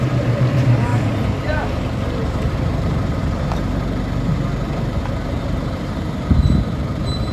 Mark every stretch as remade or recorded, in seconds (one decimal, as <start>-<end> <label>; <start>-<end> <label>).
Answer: 0.0-0.9 remade; 0.9-1.8 recorded; 1.8-3.2 remade; 3.2-5.3 recorded; 5.3-7.3 remade